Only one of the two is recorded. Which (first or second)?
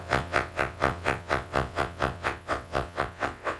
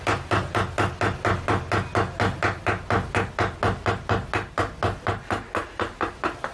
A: second